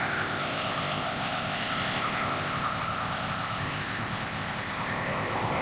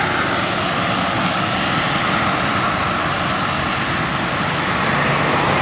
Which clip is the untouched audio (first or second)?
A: second